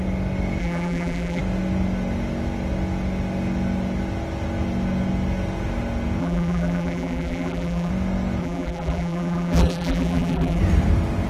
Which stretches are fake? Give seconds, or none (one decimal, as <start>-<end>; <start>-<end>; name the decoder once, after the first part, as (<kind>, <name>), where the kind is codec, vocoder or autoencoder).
0.6-1.4 (vocoder, BigVGAN v2); 6.2-7.9; 8.4-10.6